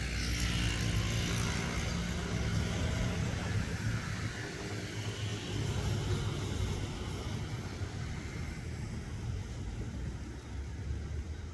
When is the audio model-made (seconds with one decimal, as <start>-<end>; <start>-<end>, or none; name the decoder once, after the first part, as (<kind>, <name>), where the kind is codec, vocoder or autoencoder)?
2.5-4.3 (vocoder, BigVGAN v2)